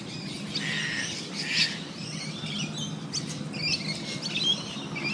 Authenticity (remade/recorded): recorded